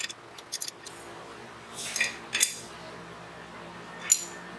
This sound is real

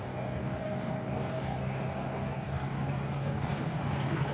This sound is fake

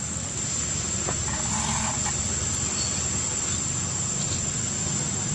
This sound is real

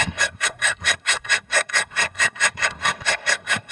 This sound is fake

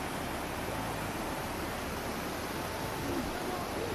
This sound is real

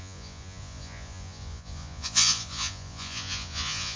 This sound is fake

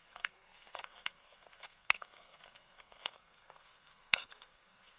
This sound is fake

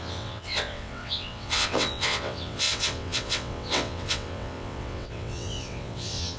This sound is fake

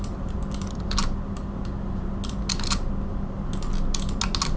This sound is real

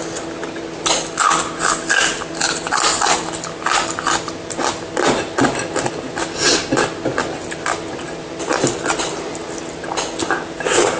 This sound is real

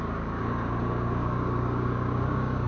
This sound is fake